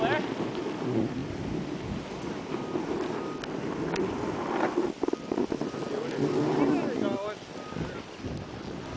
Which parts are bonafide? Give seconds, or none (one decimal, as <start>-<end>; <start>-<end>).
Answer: 0.0-9.0